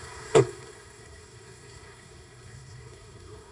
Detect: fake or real fake